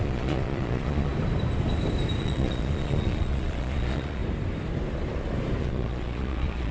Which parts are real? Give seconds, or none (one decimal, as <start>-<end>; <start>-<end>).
1.1-2.2; 4.2-5.6